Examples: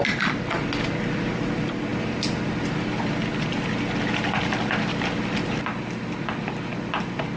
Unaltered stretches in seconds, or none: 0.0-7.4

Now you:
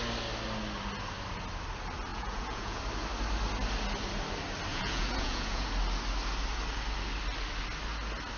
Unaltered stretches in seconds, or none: 0.0-2.1; 2.8-4.7; 5.7-8.4

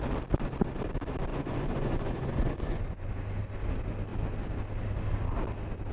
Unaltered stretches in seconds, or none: 0.0-1.3; 3.1-5.9

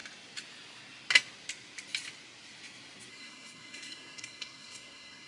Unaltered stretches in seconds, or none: 0.0-3.1